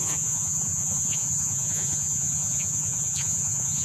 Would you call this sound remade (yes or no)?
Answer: yes